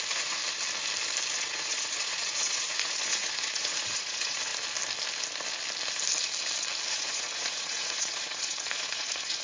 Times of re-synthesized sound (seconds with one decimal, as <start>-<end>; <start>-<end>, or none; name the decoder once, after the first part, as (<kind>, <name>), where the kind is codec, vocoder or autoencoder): 0.0-0.4 (vocoder, Vocos); 1.3-4.5; 6.9-9.4